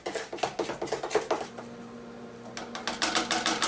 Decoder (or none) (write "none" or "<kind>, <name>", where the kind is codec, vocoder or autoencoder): none